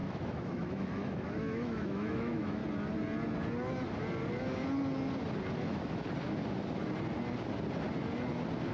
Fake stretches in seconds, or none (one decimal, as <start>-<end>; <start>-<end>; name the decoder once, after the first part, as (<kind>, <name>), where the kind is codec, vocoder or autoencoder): 0.0-2.6 (autoencoder, DAC-VAE); 5.6-6.0